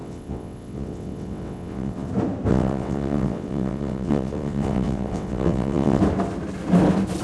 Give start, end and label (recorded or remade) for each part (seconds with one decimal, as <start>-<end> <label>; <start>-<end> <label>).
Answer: 0.0-2.1 remade; 2.1-2.5 recorded; 2.5-6.0 remade; 6.0-7.2 recorded